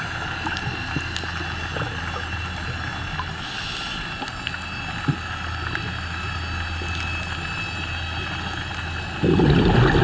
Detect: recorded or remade recorded